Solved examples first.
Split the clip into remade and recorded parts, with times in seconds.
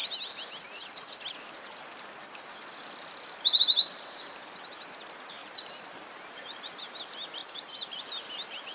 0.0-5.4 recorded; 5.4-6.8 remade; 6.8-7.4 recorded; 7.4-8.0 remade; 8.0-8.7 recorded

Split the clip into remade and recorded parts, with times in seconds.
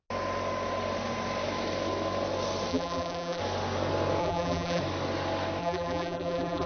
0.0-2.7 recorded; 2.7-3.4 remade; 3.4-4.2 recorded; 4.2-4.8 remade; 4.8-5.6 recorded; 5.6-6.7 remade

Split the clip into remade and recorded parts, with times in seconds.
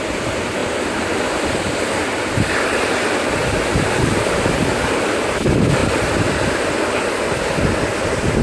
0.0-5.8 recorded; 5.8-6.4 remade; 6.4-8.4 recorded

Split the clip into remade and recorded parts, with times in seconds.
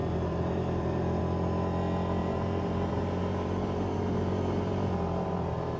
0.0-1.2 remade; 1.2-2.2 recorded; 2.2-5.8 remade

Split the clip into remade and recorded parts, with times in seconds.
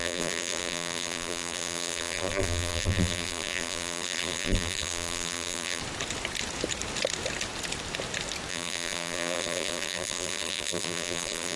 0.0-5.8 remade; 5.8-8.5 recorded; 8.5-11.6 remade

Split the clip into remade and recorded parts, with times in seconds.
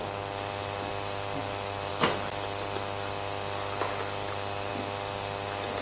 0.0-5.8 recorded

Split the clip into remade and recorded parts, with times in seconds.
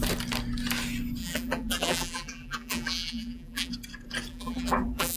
0.0-1.2 recorded; 1.2-3.7 remade; 3.7-4.3 recorded; 4.3-5.2 remade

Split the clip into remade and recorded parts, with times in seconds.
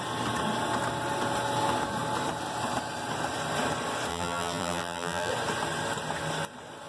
0.0-4.1 recorded; 4.1-5.3 remade; 5.3-6.9 recorded